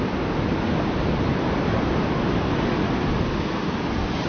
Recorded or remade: recorded